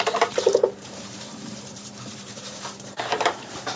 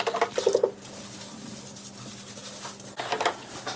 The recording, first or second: second